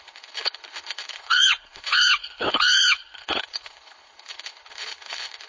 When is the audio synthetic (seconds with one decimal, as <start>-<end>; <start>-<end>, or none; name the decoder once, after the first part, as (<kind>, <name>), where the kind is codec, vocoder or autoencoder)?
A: 0.0-5.5 (codec, HILCodec)